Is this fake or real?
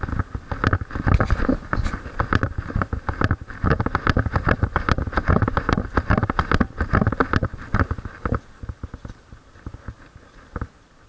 real